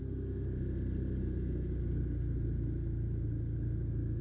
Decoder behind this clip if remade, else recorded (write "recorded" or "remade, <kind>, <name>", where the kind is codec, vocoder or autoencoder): recorded